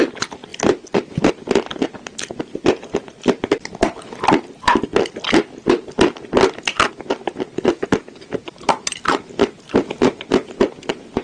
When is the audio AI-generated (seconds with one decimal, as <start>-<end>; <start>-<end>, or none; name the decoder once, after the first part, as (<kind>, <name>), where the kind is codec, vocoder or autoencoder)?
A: none